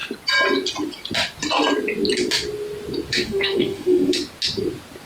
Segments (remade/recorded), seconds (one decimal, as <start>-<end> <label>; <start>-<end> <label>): 0.0-3.1 recorded; 3.1-4.2 remade; 4.2-5.1 recorded